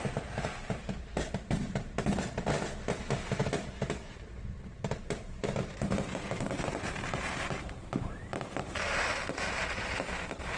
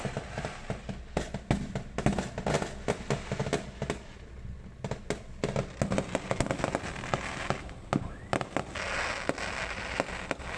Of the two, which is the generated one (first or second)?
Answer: first